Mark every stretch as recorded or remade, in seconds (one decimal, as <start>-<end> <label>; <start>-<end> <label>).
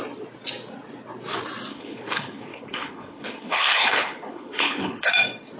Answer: 0.0-1.7 recorded; 1.7-5.1 remade; 5.1-5.6 recorded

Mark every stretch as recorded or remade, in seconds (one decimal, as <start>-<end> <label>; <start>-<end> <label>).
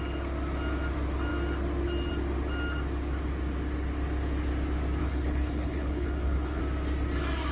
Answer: 0.0-5.0 recorded; 5.0-6.6 remade; 6.6-7.5 recorded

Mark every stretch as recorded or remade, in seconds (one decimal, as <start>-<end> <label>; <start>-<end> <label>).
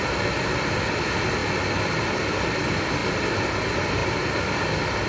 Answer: 0.0-5.1 recorded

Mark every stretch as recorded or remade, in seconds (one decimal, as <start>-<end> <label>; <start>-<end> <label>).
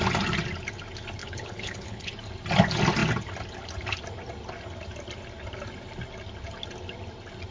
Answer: 0.0-1.2 recorded; 1.2-2.1 remade; 2.1-7.5 recorded